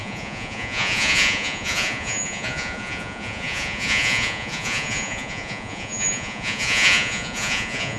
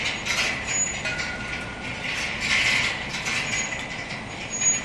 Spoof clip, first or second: first